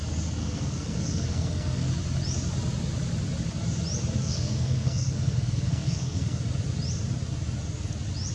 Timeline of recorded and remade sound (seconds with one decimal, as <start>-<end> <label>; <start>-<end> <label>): 0.0-0.4 recorded; 0.4-1.9 remade; 1.9-4.2 recorded; 4.2-6.4 remade; 6.4-8.3 recorded